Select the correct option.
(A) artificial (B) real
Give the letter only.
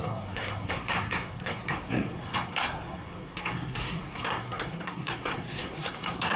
A